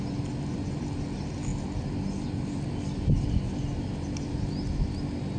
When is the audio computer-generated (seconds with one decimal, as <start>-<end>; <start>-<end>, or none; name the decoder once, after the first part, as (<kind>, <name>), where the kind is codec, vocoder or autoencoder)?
none